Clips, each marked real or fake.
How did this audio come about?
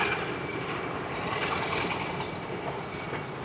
real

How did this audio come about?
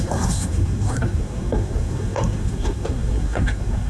fake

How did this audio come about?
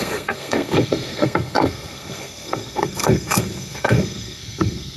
fake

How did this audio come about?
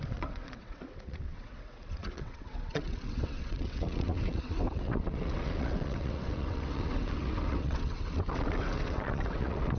fake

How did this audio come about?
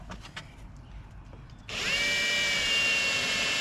real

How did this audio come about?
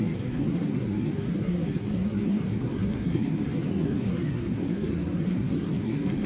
fake